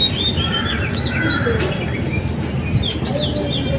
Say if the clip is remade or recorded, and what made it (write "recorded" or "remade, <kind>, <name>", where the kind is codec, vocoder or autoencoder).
recorded